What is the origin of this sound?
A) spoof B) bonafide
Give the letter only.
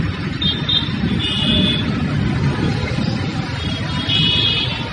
B